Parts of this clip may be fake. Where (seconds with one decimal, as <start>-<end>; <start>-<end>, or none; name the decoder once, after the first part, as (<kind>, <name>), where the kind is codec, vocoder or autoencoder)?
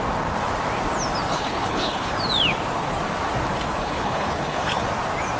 1.3-2.1 (codec, HILCodec); 3.8-4.9